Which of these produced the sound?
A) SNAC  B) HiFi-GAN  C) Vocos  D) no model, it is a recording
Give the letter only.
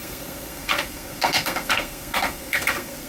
A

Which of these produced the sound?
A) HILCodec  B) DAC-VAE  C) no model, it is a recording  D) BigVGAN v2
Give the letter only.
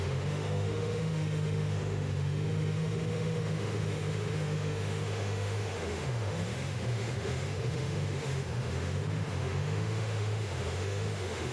B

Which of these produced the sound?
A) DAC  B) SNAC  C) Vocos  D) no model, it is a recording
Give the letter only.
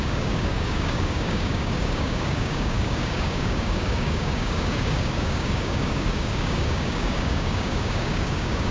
A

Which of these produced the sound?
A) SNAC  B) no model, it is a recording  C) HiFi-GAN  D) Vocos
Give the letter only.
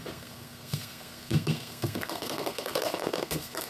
A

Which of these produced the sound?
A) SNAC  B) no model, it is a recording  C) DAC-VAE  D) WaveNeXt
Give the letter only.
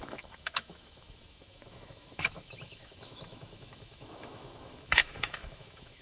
C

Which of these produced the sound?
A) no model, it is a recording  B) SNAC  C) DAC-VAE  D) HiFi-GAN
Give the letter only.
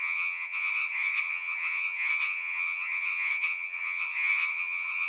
D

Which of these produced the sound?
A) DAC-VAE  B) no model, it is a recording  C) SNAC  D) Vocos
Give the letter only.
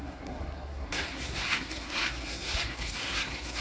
C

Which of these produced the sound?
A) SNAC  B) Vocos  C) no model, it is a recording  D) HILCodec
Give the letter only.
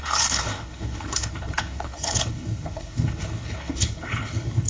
D